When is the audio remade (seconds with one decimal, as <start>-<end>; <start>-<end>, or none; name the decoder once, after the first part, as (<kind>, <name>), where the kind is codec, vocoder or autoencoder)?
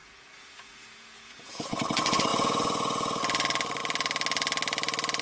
0.0-1.8 (vocoder, Vocos); 2.3-3.2